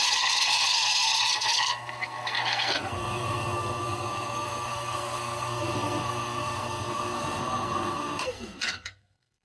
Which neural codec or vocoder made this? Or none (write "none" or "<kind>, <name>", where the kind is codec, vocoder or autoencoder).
codec, SNAC